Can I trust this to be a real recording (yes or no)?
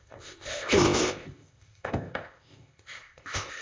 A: no